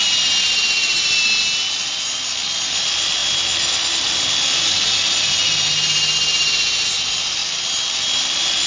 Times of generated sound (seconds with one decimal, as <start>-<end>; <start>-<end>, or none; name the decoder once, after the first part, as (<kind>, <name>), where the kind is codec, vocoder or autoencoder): none